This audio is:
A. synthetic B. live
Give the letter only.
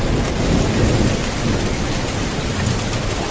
B